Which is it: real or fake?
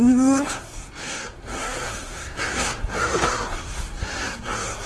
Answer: fake